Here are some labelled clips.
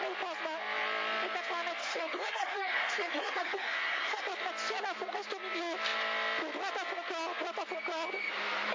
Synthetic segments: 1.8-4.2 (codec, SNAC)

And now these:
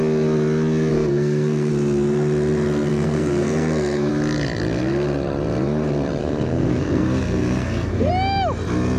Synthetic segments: 0.9-1.7 (codec, SNAC); 2.9-4.1; 6.2-8.1

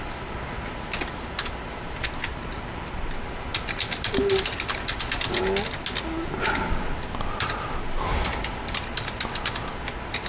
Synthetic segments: none

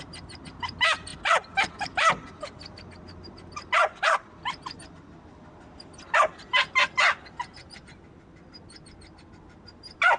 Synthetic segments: none

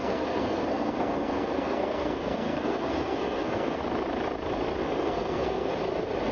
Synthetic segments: 0.0-3.8 (codec, SNAC); 4.8-5.7